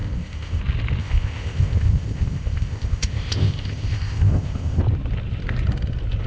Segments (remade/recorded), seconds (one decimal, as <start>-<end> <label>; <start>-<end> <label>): 0.0-0.6 remade; 0.6-1.0 recorded; 1.0-4.8 remade; 4.8-6.3 recorded